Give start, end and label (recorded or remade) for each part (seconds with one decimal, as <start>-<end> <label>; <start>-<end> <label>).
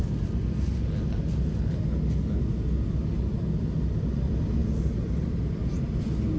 0.0-3.8 recorded; 3.8-4.6 remade; 4.6-5.9 recorded; 5.9-6.4 remade